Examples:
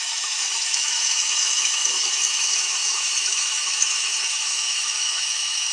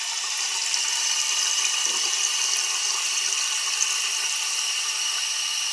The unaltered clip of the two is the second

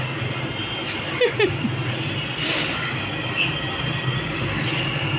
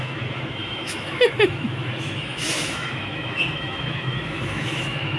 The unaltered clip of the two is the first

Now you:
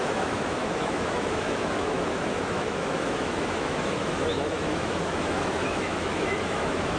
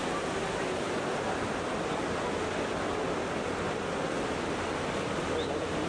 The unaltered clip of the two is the second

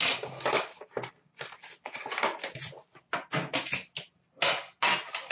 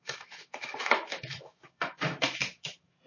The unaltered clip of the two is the first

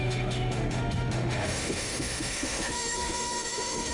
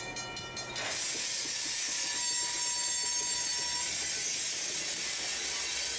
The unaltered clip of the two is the second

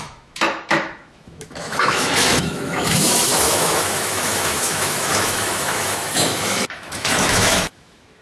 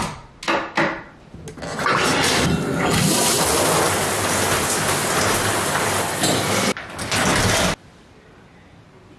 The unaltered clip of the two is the second